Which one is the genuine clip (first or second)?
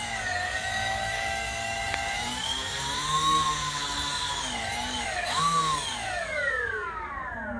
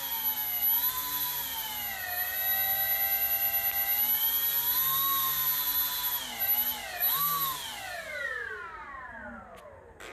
second